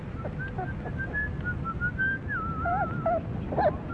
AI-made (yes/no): no